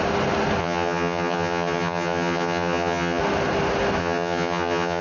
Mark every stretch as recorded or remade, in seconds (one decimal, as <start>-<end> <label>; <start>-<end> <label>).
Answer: 0.0-0.6 recorded; 0.6-3.2 remade; 3.2-4.0 recorded; 4.0-5.0 remade